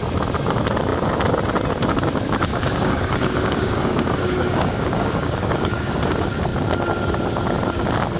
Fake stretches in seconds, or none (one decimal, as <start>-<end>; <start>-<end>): 2.5-6.0